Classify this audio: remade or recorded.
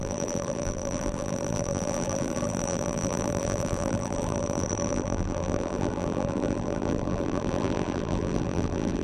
remade